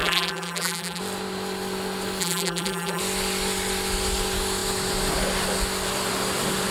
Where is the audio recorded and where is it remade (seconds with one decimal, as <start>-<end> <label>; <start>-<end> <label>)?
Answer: 0.0-1.0 remade; 1.0-2.2 recorded; 2.2-3.0 remade; 3.0-6.7 recorded